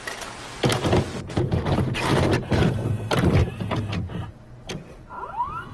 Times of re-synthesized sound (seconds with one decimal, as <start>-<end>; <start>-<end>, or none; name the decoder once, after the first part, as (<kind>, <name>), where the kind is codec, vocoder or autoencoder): 2.1-5.7 (vocoder, BigVGAN v2)